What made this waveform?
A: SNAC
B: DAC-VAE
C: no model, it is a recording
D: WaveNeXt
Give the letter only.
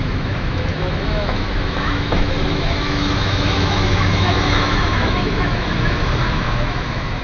B